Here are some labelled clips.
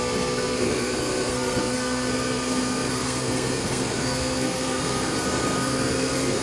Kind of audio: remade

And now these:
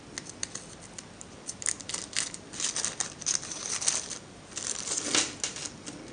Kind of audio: recorded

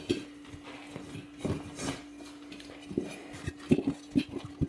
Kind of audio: recorded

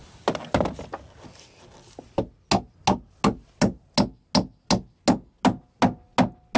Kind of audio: recorded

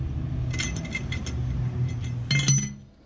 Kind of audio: recorded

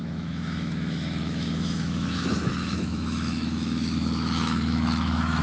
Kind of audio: remade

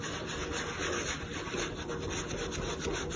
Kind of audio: recorded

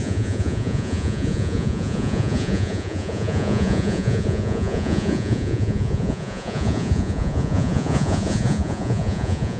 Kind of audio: remade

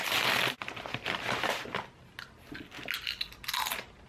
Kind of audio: recorded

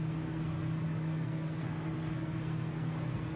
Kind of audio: remade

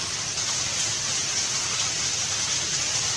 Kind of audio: recorded